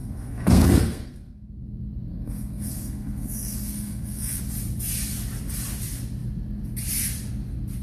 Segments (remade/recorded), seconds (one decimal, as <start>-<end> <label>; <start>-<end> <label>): 0.0-1.5 remade; 1.5-2.1 recorded; 2.1-4.4 remade; 4.4-7.8 recorded